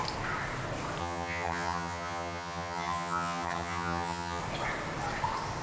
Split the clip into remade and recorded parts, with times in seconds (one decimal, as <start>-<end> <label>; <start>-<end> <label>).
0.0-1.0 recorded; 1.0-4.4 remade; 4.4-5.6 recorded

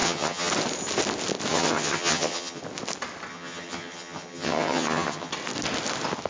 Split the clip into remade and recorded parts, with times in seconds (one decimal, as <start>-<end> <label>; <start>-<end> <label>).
0.0-0.5 remade; 0.5-1.5 recorded; 1.5-2.6 remade; 2.6-3.3 recorded; 3.3-5.3 remade; 5.3-6.3 recorded

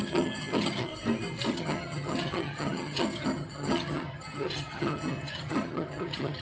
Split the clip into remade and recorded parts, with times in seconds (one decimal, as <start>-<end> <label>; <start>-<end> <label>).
0.0-0.9 remade; 0.9-1.5 recorded; 1.5-6.4 remade

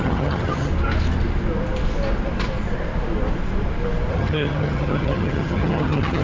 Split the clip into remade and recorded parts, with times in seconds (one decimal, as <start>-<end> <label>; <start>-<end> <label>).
0.0-0.7 remade; 0.7-4.1 recorded; 4.1-6.2 remade

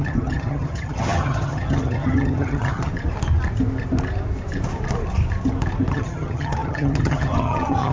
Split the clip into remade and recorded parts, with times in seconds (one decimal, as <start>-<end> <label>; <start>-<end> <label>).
0.0-2.9 remade; 2.9-5.9 recorded; 5.9-7.9 remade